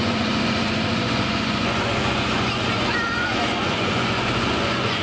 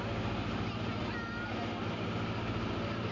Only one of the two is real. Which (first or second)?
second